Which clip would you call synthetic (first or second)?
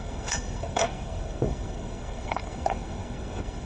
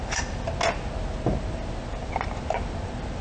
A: first